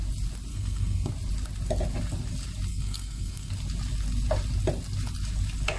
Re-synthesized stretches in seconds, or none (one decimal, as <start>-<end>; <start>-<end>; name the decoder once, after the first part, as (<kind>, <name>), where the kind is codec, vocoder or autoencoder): 0.5-1.1 (codec, SNAC); 2.7-3.5